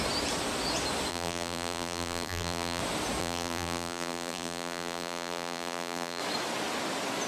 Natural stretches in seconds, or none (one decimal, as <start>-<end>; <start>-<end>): 0.0-1.1; 2.8-3.2; 6.2-7.3